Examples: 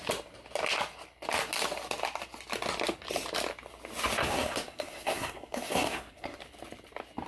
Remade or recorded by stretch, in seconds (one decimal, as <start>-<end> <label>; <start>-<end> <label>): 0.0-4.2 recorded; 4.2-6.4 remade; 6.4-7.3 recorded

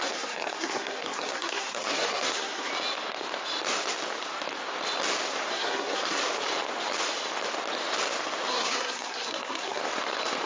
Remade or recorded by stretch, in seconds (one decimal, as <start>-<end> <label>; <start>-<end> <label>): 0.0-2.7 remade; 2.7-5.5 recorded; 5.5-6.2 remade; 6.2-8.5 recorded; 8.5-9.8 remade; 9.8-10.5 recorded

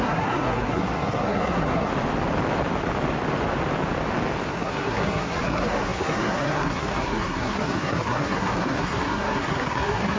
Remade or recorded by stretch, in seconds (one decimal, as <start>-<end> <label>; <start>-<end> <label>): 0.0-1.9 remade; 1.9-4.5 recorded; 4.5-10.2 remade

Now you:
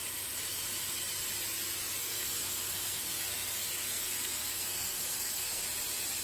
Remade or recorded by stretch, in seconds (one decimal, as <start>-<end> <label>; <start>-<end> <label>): 0.0-2.0 recorded; 2.0-5.6 remade; 5.6-6.2 recorded

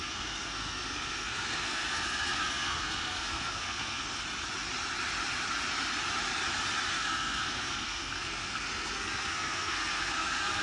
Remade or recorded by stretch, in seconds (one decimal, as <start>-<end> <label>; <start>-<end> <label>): 0.0-4.1 remade; 4.1-6.9 recorded; 6.9-10.6 remade

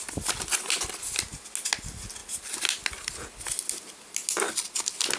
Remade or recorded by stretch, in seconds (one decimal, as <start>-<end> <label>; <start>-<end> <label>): 0.0-5.2 recorded